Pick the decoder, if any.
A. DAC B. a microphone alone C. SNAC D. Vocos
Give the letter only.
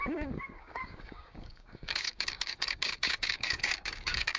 A